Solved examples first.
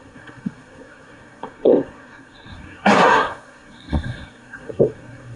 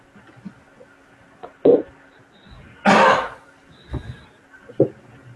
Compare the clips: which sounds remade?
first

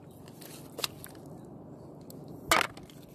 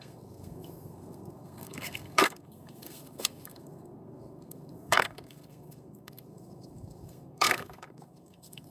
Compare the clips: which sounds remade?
second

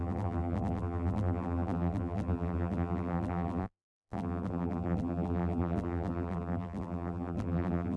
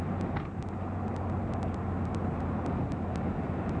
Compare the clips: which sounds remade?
first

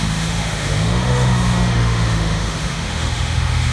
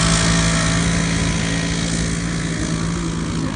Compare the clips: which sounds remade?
first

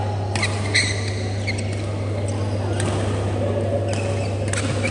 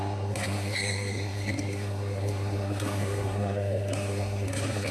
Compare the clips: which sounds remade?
second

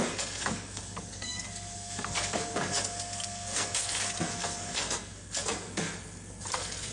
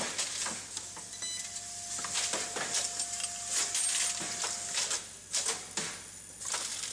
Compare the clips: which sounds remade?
first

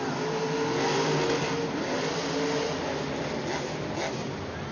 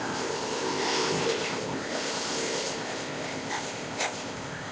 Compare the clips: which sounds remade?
second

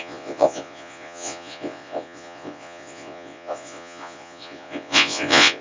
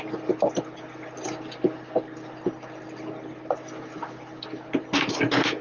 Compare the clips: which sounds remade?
first